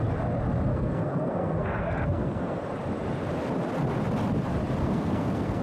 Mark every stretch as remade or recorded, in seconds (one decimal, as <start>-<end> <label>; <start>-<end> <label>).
0.0-0.7 recorded; 0.7-2.6 remade; 2.6-4.8 recorded; 4.8-5.6 remade